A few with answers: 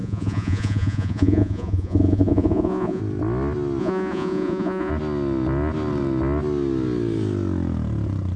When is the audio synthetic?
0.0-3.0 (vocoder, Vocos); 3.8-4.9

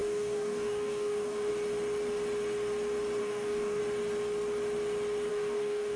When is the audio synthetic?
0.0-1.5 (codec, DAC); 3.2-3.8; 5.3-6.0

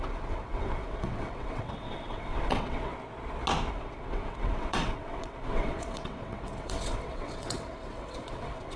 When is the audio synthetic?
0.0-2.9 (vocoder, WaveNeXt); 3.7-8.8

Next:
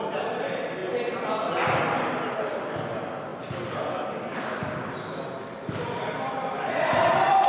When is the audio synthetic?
none

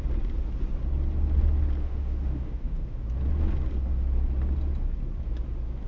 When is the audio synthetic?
1.8-3.0 (autoencoder, DAC-VAE)

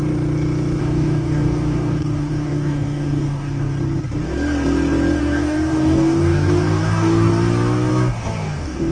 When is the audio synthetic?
0.8-3.7 (codec, DAC); 5.2-7.3; 7.9-8.9

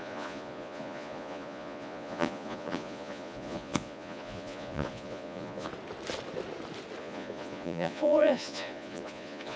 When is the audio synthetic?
0.0-5.7 (vocoder, Vocos); 7.0-9.6